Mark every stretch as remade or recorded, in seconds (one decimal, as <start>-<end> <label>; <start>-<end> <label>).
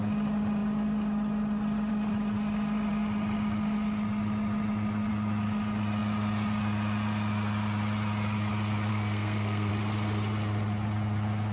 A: 0.0-8.9 recorded; 8.9-9.7 remade; 9.7-11.5 recorded